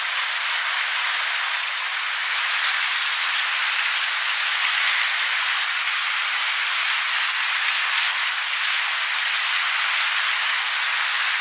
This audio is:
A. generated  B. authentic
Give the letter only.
B